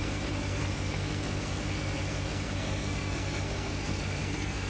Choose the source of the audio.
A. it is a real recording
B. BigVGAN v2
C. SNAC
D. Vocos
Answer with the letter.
C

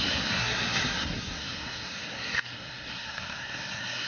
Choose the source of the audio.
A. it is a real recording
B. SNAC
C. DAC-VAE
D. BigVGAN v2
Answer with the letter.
B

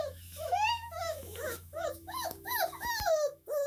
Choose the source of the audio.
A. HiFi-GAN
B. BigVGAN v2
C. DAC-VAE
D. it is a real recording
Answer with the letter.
C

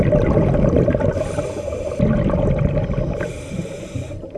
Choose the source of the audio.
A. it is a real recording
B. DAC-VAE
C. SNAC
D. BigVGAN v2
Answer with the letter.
A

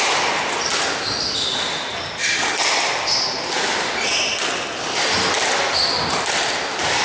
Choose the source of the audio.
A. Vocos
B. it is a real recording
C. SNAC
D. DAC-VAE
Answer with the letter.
B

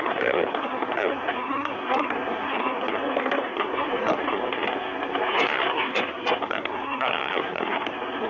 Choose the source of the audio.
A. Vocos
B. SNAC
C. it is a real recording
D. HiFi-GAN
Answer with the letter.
B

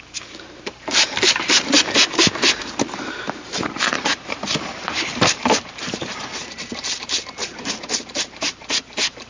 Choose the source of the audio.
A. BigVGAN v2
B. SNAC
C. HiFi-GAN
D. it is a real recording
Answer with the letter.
A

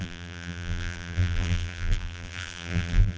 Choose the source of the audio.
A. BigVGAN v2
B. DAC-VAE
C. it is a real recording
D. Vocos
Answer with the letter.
A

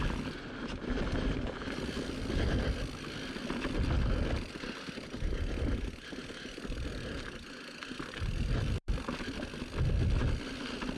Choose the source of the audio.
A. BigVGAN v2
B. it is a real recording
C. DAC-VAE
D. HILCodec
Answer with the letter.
B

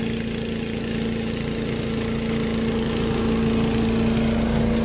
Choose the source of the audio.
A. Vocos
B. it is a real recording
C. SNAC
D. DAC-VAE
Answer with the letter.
B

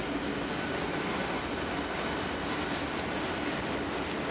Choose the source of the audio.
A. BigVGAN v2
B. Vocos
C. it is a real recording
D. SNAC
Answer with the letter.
C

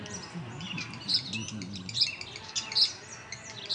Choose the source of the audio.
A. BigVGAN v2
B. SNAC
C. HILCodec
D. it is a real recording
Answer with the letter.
D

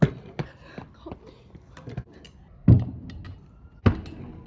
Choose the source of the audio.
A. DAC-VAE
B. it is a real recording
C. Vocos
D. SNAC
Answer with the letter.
B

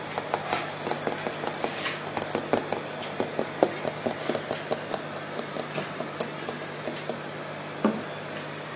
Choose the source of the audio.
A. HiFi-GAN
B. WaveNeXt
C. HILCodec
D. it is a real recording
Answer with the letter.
D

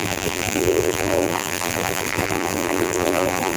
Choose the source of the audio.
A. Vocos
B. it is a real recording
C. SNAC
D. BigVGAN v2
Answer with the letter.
D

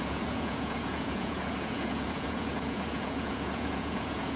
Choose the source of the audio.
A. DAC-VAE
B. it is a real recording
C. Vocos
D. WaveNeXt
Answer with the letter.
C